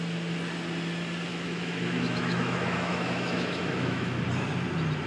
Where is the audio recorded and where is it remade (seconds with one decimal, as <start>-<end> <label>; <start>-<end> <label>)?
0.0-1.3 recorded; 1.3-4.2 remade; 4.2-5.1 recorded